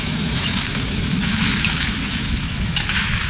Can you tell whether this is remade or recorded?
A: remade